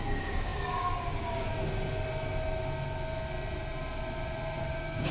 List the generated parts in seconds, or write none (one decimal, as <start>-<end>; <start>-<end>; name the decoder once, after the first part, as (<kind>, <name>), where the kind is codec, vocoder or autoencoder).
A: 0.0-1.5 (codec, DAC); 4.6-5.1